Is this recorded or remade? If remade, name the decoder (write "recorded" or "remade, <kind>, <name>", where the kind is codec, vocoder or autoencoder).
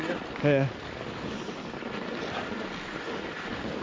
recorded